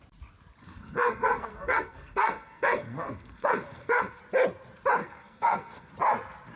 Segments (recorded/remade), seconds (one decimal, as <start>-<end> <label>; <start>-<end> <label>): 0.0-0.6 recorded; 0.6-4.2 remade; 4.2-5.0 recorded; 5.0-5.9 remade; 5.9-6.6 recorded